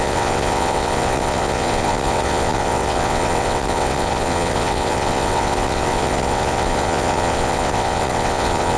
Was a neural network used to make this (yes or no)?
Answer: yes